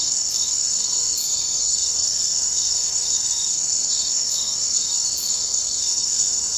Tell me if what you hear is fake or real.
fake